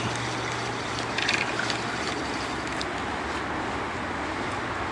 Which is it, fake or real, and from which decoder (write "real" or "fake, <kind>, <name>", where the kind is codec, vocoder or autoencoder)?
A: real